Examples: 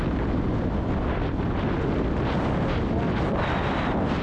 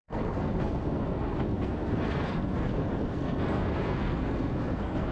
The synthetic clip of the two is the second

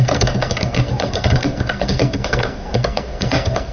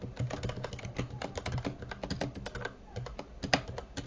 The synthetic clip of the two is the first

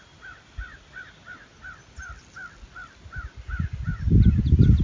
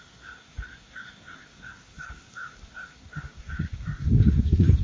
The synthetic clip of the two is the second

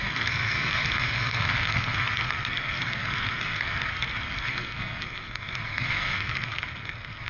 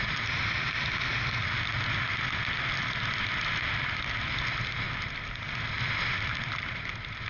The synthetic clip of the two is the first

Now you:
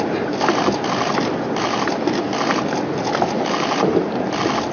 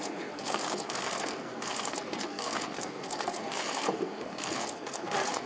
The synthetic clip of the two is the second